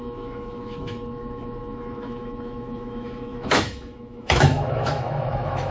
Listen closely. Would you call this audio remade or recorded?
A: remade